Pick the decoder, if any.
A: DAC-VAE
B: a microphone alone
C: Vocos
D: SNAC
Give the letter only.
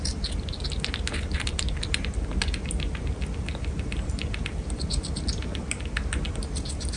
B